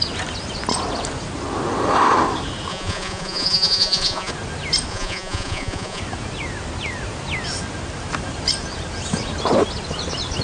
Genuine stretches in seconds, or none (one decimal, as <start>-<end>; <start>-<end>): 0.0-2.7; 4.3-4.9; 6.0-10.4